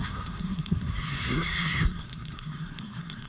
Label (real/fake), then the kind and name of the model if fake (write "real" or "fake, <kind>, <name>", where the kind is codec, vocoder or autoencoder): fake, codec, SNAC